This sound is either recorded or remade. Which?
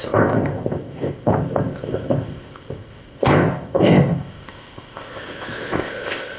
remade